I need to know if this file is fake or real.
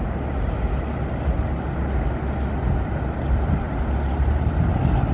real